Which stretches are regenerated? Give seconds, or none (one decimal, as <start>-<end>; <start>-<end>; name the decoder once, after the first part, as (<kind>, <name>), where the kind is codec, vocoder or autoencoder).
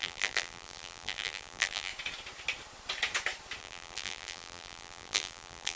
0.0-1.9 (vocoder, BigVGAN v2); 3.6-5.8